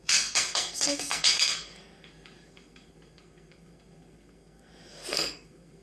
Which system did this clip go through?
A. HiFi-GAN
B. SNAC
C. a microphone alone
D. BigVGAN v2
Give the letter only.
B